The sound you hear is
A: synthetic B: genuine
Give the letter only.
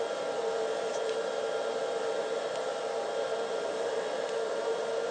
B